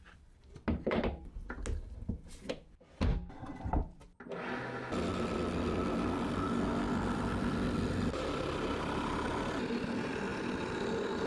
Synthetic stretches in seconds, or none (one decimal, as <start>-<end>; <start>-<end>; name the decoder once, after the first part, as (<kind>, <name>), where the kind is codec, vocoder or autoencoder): none